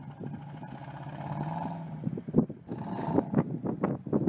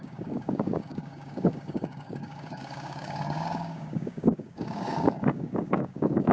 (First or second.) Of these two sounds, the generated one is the second